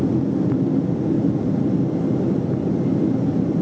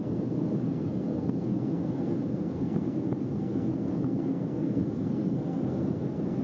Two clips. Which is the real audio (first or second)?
first